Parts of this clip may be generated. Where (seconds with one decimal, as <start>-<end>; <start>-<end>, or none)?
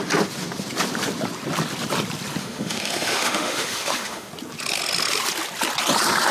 2.4-4.3